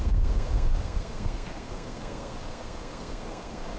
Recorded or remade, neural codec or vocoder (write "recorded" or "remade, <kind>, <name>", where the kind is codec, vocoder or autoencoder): remade, codec, SNAC